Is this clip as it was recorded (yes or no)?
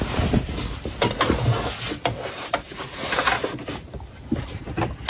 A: yes